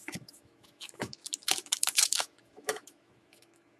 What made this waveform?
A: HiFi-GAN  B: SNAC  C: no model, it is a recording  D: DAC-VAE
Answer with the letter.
D